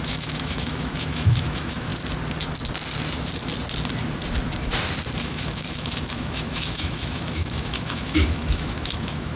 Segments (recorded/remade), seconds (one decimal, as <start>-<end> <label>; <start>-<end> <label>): 0.0-1.9 remade; 1.9-5.2 recorded; 5.2-9.4 remade

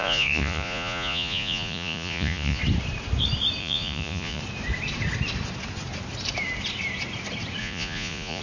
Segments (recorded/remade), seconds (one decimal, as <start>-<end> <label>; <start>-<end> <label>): 0.0-2.6 remade; 2.6-3.6 recorded; 3.6-4.4 remade; 4.4-7.6 recorded; 7.6-8.4 remade

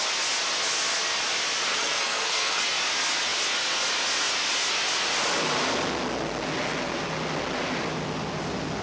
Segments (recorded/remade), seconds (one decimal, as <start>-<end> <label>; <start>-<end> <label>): 0.0-1.7 recorded; 1.7-2.6 remade; 2.6-8.8 recorded

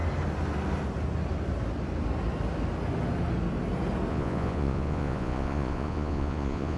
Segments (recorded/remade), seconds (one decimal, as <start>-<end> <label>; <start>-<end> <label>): 0.0-4.1 recorded; 4.1-6.8 remade

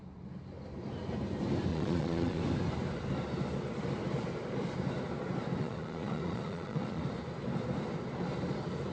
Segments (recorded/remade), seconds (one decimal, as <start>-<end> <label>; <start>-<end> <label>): 0.0-1.7 recorded; 1.7-2.4 remade; 2.4-5.6 recorded; 5.6-7.0 remade; 7.0-8.9 recorded

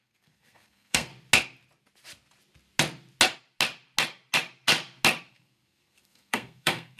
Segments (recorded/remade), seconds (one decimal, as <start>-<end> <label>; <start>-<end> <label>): 0.0-1.1 remade; 1.1-5.3 recorded; 5.3-7.0 remade

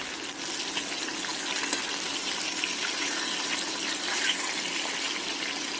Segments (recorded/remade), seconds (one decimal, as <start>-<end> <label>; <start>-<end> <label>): 0.0-5.8 recorded

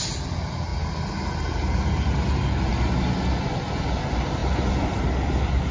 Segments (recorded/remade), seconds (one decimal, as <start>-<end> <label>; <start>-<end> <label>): 0.0-5.7 recorded